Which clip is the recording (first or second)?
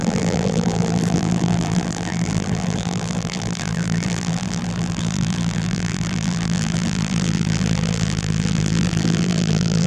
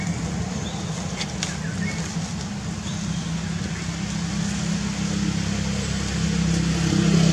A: second